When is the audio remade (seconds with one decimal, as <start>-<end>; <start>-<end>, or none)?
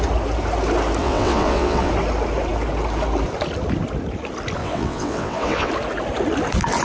1.0-1.9; 4.6-5.7